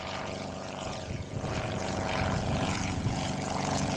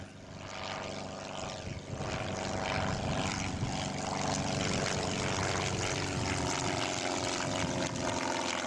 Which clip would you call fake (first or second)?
first